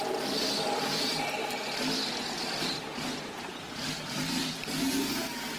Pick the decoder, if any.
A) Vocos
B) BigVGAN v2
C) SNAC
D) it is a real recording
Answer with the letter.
D